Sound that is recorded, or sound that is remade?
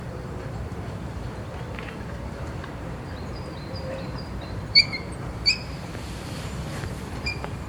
remade